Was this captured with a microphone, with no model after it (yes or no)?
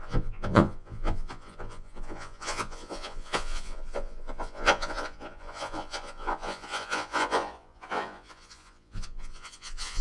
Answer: no